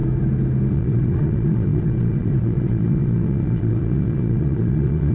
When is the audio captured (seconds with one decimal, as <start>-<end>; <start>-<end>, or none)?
0.0-0.7